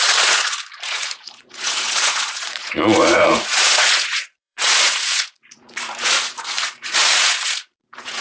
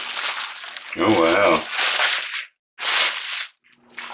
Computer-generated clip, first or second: first